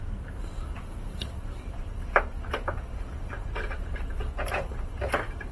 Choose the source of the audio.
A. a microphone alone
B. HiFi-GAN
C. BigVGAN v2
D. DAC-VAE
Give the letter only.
C